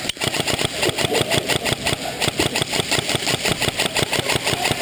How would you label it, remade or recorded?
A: remade